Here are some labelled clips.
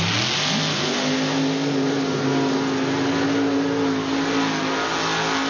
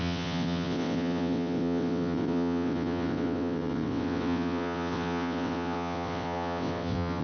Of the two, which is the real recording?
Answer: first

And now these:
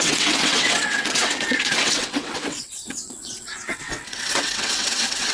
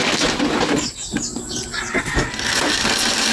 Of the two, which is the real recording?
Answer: second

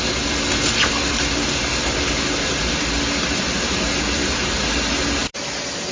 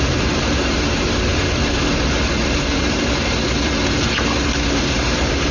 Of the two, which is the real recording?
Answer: first